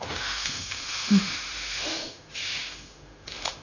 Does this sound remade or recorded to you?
remade